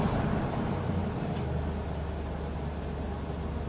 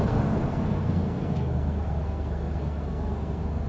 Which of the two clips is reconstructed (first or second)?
second